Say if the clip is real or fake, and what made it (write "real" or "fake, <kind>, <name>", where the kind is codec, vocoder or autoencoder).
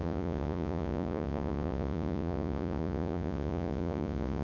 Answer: fake, vocoder, Vocos